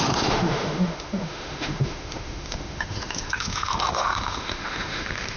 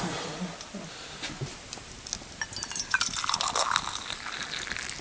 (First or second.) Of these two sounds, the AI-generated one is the first